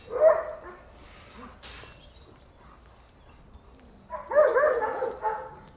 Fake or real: real